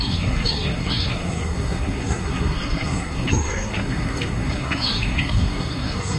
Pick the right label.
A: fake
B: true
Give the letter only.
A